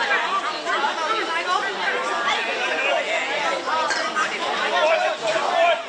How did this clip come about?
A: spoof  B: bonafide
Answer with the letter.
B